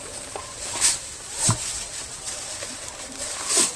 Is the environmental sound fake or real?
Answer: fake